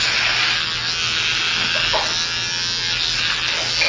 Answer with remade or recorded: recorded